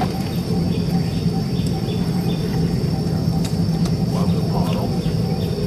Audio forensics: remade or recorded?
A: recorded